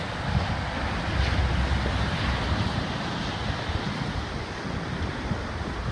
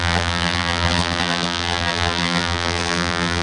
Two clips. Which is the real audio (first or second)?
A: first